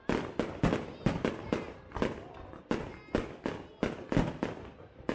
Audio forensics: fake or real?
real